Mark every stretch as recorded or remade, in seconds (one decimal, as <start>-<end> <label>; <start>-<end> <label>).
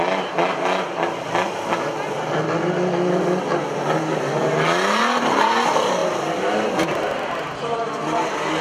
0.0-8.6 recorded